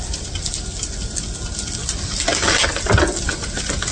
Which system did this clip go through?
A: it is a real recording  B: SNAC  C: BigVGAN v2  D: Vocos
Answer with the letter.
A